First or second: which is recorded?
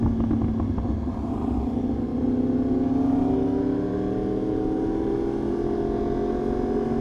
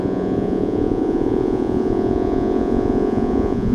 first